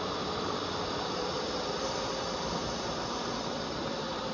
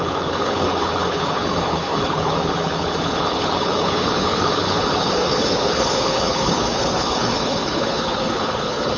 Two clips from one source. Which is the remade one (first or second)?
second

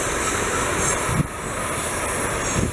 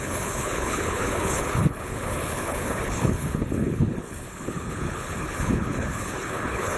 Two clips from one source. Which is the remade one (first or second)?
second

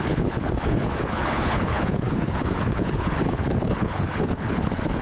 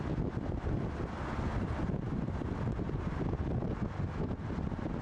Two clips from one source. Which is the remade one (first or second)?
first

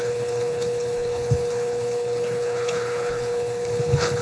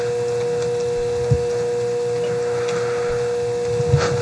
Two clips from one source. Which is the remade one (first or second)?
first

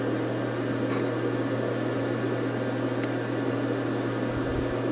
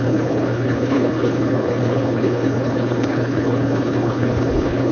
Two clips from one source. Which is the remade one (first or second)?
second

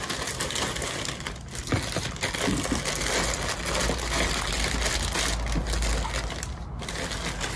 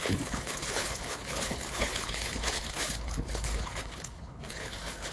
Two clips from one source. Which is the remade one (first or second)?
second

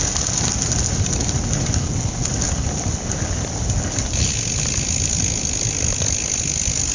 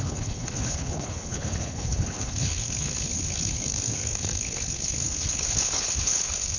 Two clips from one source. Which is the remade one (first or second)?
second